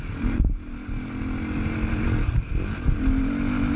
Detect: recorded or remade recorded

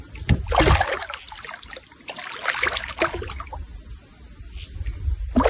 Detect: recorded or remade recorded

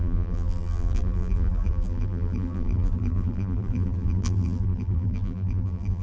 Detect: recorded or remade remade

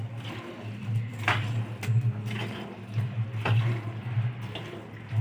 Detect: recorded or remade recorded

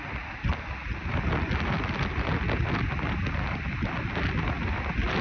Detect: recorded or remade recorded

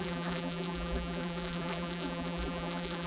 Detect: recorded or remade remade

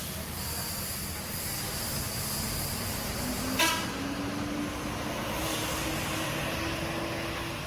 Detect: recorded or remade recorded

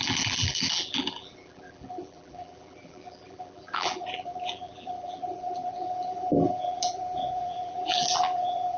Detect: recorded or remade remade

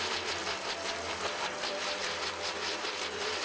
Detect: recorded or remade recorded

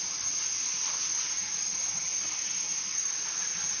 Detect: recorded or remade recorded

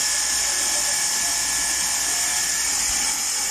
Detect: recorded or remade recorded